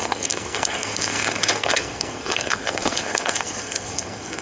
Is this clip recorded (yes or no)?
no